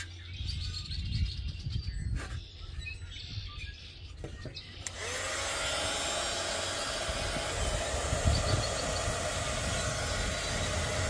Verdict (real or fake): real